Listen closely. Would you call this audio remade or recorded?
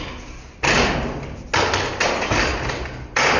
recorded